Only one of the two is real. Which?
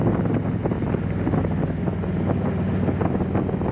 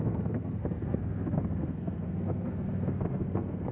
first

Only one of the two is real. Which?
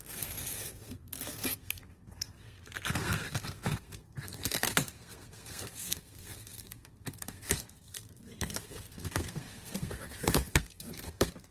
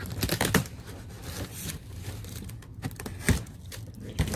second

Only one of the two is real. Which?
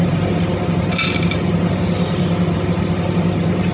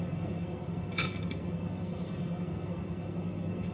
first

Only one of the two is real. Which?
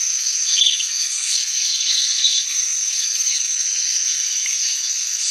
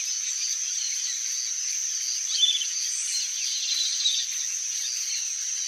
second